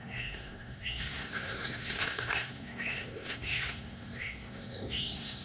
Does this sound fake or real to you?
fake